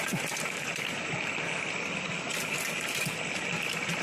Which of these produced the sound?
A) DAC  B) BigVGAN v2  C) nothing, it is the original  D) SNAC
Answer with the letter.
C